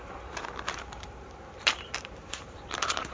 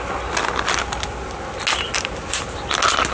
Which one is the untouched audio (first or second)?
second